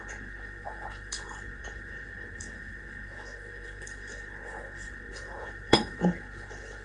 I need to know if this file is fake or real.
fake